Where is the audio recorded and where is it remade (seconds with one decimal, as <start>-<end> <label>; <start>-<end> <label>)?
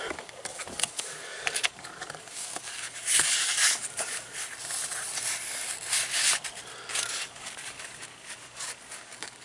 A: 0.0-4.4 remade; 4.4-6.9 recorded; 6.9-9.4 remade